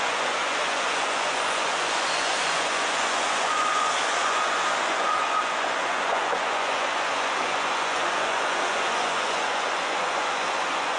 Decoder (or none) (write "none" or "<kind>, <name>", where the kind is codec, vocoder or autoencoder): vocoder, Vocos